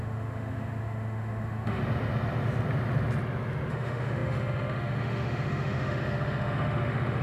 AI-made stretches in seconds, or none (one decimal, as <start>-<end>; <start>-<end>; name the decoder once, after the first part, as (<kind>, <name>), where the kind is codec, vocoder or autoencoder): 0.0-1.8 (autoencoder, DAC-VAE); 3.7-7.2